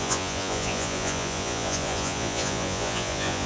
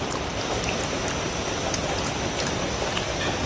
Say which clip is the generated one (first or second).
first